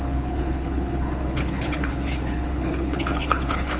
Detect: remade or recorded remade